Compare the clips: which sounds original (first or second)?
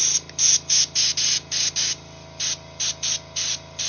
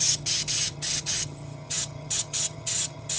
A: first